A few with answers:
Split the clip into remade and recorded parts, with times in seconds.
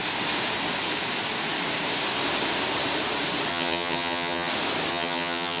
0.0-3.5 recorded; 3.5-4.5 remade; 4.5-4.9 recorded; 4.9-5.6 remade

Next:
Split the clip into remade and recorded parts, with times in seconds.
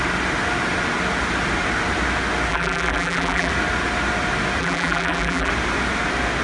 0.0-2.5 recorded; 2.5-3.5 remade; 3.5-4.6 recorded; 4.6-5.5 remade; 5.5-6.4 recorded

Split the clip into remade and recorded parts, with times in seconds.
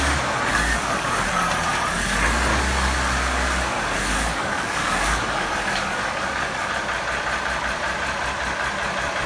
0.0-0.5 recorded; 0.5-1.3 remade; 1.3-2.5 recorded; 2.5-6.7 remade; 6.7-9.3 recorded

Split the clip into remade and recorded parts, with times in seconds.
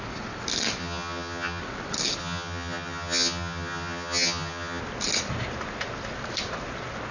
0.0-0.8 recorded; 0.8-1.6 remade; 1.6-2.2 recorded; 2.2-4.8 remade; 4.8-7.1 recorded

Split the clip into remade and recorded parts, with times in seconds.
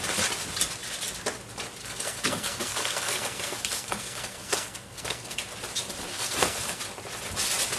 0.0-1.8 recorded; 1.8-5.4 remade; 5.4-6.1 recorded; 6.1-6.8 remade; 6.8-7.8 recorded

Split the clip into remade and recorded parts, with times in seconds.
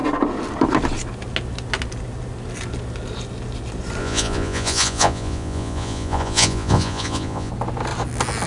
0.0-4.0 recorded; 4.0-7.5 remade; 7.5-8.5 recorded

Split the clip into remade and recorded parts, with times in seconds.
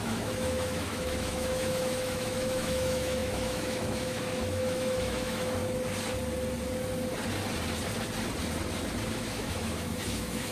0.0-5.6 remade; 5.6-9.1 recorded; 9.1-10.5 remade